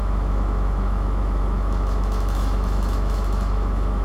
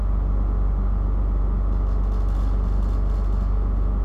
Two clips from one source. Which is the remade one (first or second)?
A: first